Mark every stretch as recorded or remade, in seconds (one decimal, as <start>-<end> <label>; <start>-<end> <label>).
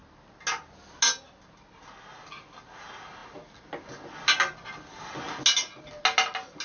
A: 0.0-6.6 recorded